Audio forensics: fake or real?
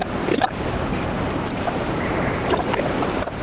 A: fake